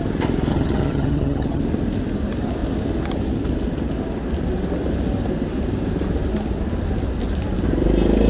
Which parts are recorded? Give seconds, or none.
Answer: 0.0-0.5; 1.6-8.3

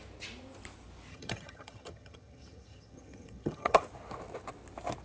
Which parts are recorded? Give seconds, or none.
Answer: 0.0-1.1; 3.8-5.0

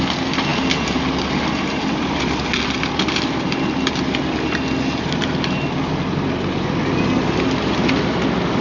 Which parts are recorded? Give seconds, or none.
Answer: 0.0-8.6

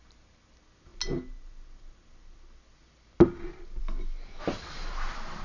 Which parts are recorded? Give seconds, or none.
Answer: 0.0-5.4